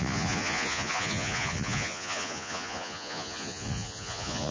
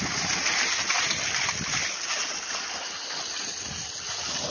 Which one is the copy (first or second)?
first